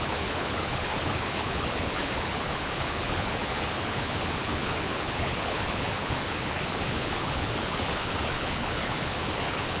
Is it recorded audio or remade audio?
remade